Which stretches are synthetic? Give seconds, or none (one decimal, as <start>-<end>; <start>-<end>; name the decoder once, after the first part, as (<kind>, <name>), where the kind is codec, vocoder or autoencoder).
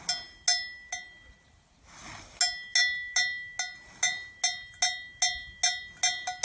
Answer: none